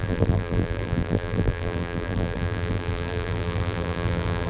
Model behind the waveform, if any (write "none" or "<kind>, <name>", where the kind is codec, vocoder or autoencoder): vocoder, BigVGAN v2